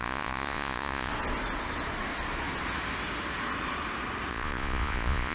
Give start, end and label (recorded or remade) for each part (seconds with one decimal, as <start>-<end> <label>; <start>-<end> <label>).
0.0-1.1 remade; 1.1-4.3 recorded; 4.3-5.3 remade